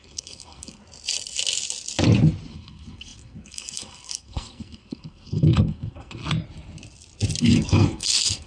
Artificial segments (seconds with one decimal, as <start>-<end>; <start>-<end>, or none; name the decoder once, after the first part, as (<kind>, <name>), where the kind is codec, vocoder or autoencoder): 0.0-0.8 (codec, SNAC); 2.5-6.2; 7.4-8.5

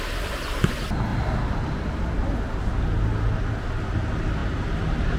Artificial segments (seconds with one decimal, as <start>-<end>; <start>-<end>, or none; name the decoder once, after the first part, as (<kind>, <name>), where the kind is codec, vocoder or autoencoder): 1.1-1.8 (vocoder, BigVGAN v2); 4.4-5.2

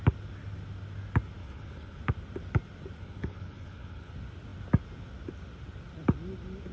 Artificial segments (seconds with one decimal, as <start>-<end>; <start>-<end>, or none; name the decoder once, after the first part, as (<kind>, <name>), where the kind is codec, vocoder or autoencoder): 1.4-2.0 (codec, HILCodec); 3.0-4.1

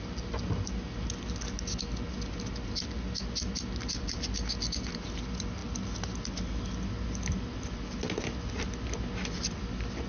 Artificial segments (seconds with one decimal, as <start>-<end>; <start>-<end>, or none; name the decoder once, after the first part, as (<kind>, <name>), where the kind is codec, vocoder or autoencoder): none